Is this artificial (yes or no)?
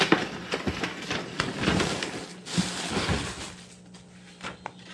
no